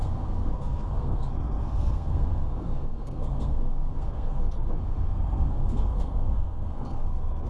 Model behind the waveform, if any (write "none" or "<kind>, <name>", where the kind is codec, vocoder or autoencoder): codec, SNAC